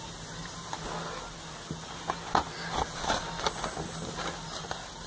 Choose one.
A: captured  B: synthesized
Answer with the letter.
A